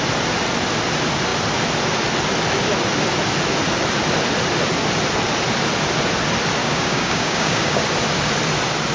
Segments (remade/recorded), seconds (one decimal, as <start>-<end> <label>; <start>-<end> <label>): 0.0-6.6 recorded; 6.6-7.8 remade; 7.8-8.9 recorded